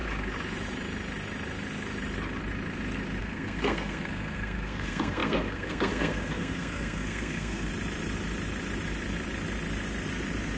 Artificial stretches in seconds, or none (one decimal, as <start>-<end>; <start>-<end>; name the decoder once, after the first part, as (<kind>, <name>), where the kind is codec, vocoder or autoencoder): 3.2-7.7 (codec, SNAC)

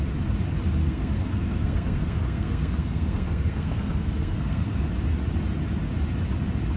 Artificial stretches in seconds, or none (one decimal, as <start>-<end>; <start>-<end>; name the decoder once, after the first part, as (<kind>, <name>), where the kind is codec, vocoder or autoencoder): 0.8-4.9 (codec, SNAC)

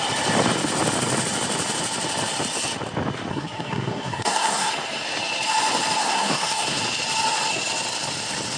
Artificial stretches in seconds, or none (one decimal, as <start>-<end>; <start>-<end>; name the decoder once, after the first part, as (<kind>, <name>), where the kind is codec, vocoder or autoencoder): 3.3-4.7 (codec, SNAC); 6.0-6.8

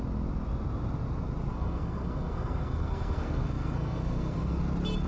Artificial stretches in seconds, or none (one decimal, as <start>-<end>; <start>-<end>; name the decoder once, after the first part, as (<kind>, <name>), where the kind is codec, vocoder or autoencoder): 1.5-4.6 (codec, SNAC)

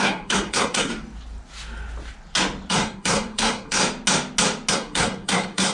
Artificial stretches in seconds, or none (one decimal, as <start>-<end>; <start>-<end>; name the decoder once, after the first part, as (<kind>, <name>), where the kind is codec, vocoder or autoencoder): 0.0-0.9 (codec, SNAC); 2.7-3.8; 4.7-5.7

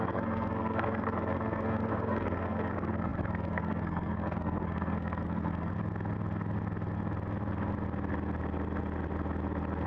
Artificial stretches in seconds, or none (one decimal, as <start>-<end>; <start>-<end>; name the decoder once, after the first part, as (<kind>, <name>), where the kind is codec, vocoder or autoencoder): 0.0-5.7 (codec, SNAC)

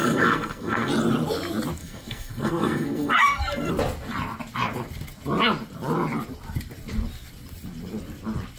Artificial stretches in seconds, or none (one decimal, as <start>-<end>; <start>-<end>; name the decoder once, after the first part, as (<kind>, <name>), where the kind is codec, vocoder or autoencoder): 0.0-0.9 (codec, SNAC); 1.8-3.7

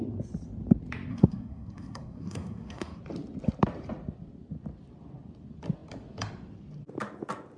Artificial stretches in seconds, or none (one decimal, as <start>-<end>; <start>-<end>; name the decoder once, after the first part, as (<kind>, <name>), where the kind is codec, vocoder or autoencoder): 1.1-3.0 (codec, SNAC)